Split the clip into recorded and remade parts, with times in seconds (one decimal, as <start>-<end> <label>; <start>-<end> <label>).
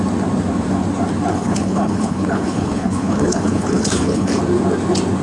0.0-1.3 recorded; 1.3-4.4 remade; 4.4-5.2 recorded